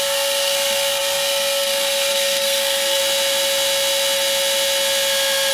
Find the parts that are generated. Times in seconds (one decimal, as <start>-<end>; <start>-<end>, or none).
0.0-3.0

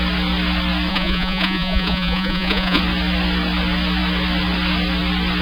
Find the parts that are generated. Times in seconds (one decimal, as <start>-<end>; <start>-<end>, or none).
0.9-2.8